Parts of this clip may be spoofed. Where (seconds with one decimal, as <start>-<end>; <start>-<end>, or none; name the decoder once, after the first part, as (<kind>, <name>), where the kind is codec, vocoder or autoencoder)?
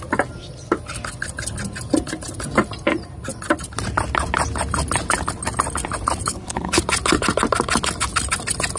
6.3-6.8 (codec, HILCodec)